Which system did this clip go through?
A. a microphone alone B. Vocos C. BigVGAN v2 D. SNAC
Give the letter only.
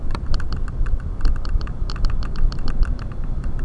C